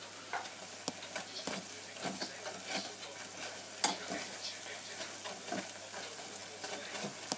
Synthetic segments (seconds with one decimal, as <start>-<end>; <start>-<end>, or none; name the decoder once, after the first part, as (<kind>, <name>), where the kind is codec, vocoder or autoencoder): none